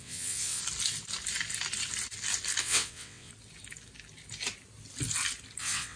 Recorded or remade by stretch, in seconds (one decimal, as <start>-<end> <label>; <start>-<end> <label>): 0.0-0.6 remade; 0.6-2.6 recorded; 2.6-3.3 remade; 3.3-5.6 recorded; 5.6-6.0 remade